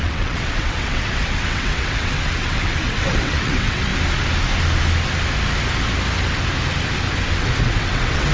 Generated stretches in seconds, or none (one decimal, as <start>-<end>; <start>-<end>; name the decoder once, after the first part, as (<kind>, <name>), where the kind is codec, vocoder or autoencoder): 0.0-3.9 (vocoder, WaveNeXt); 7.6-8.3